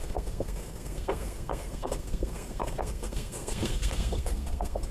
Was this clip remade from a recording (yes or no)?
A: yes